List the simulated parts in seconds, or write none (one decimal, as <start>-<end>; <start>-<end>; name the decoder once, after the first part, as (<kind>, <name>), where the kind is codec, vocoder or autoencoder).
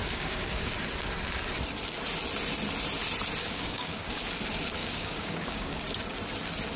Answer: 0.0-0.7 (codec, DAC); 3.4-4.2; 4.8-5.8